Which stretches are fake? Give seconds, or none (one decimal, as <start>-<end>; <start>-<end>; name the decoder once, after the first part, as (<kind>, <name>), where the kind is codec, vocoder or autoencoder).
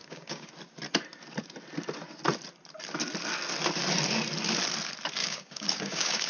0.0-0.5 (codec, DAC); 5.2-6.3